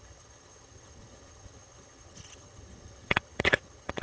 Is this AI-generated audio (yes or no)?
yes